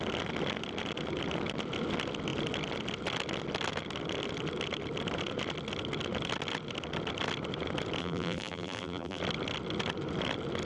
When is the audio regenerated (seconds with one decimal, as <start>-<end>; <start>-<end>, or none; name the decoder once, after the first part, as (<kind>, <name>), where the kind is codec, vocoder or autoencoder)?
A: 8.0-9.2 (vocoder, BigVGAN v2)